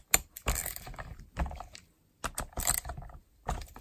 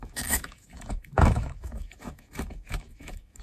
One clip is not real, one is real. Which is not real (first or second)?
second